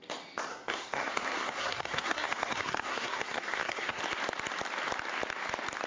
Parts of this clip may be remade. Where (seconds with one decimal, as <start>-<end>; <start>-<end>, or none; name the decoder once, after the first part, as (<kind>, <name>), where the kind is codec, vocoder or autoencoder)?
0.5-4.0 (codec, SNAC)